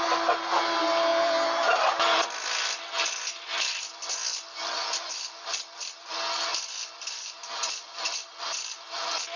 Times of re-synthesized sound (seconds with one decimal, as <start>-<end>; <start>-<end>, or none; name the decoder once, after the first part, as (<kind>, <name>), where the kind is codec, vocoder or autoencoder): none